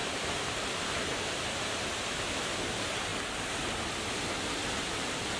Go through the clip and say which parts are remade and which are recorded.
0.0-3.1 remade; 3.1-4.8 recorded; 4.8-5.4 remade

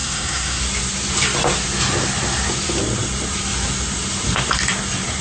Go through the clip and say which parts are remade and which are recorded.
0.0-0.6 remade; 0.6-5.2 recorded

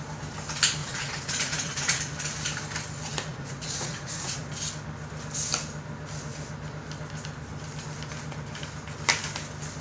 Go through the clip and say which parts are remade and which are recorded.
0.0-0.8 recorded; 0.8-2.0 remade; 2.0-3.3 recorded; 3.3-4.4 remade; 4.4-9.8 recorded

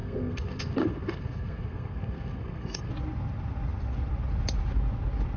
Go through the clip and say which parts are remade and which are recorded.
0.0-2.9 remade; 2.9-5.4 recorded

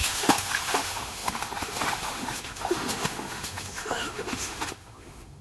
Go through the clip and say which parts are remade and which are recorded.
0.0-5.4 remade

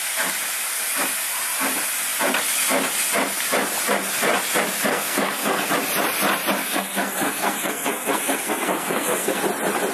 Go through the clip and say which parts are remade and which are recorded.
0.0-4.9 recorded; 4.9-5.7 remade; 5.7-6.6 recorded; 6.6-9.4 remade; 9.4-9.9 recorded